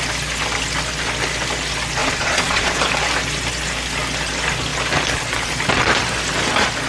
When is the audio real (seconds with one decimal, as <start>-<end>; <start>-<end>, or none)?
0.0-2.0; 2.8-6.9